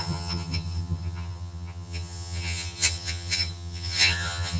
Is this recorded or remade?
remade